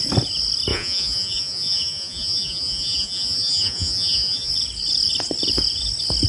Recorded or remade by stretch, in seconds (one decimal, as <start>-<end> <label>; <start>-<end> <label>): 0.0-0.7 recorded; 0.7-4.5 remade; 4.5-6.3 recorded